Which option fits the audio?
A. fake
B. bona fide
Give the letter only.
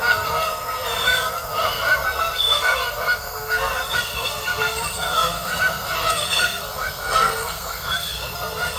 A